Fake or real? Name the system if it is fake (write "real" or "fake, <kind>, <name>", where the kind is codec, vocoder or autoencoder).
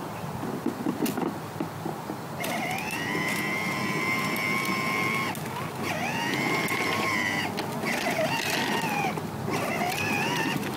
real